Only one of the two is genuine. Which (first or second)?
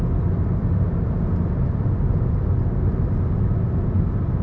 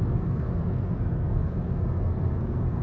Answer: first